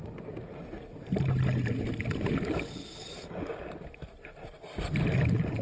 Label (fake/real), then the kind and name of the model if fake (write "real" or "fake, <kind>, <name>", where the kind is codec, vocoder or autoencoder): real